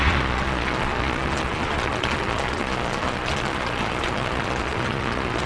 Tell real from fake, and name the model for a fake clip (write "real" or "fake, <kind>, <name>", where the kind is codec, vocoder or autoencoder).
fake, vocoder, Vocos